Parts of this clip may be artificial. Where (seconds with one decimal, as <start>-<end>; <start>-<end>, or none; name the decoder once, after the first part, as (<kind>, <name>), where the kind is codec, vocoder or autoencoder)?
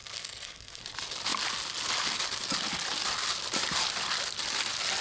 0.0-0.8 (codec, SNAC)